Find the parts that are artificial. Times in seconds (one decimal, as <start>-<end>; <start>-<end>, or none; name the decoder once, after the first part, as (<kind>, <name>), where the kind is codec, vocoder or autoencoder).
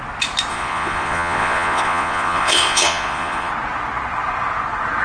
0.5-3.5 (vocoder, Vocos)